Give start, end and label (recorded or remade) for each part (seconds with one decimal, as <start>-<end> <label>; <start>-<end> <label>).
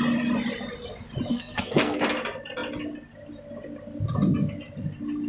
0.0-1.3 recorded; 1.3-2.0 remade; 2.0-5.3 recorded